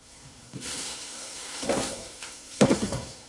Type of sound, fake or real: fake